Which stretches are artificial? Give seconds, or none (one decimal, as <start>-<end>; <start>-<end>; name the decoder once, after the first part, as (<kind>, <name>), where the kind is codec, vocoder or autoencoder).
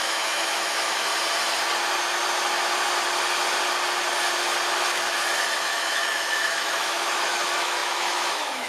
0.0-1.1 (autoencoder, DAC-VAE); 5.6-8.7